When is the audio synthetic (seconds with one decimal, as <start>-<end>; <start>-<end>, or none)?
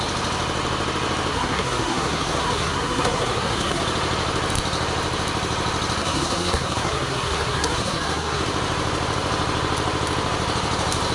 1.3-3.8; 6.0-8.4